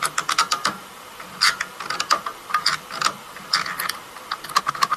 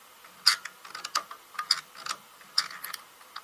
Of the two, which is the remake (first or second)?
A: first